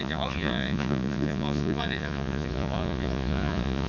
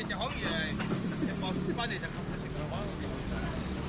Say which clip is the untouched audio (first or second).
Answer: second